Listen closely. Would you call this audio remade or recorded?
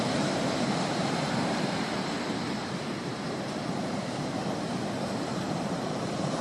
remade